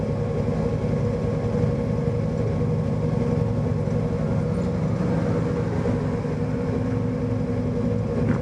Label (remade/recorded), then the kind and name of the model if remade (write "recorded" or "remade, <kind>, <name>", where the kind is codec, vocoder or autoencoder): recorded